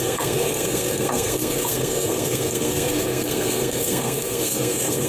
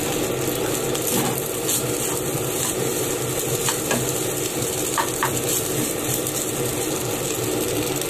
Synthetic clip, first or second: first